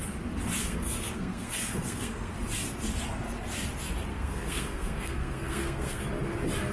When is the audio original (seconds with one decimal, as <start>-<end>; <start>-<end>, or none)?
0.0-0.6; 2.3-4.1; 6.0-6.7